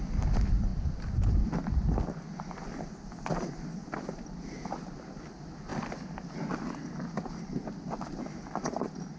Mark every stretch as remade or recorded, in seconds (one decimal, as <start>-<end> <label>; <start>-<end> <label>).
0.0-9.2 recorded